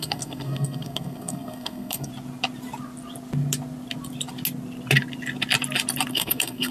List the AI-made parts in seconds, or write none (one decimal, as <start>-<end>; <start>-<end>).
0.0-2.1; 6.1-6.7